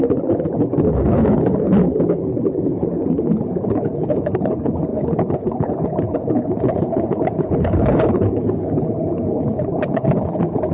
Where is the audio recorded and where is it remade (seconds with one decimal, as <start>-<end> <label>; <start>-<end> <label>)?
0.0-10.7 remade